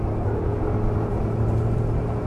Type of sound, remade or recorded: recorded